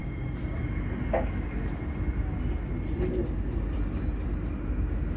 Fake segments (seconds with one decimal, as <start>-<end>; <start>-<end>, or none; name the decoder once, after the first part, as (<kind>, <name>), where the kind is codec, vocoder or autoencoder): none